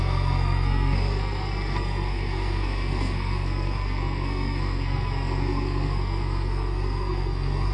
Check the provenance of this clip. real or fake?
fake